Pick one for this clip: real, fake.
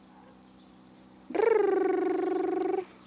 real